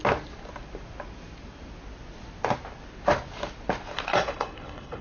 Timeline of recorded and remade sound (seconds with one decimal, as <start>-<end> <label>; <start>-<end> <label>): 0.0-4.1 recorded; 4.1-5.0 remade